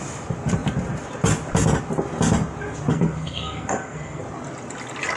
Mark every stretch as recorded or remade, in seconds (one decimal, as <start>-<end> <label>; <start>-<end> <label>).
0.0-2.9 recorded; 2.9-4.2 remade; 4.2-5.2 recorded